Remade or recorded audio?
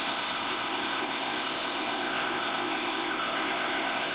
remade